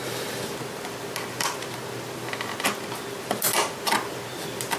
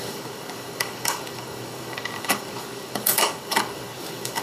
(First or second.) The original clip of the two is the first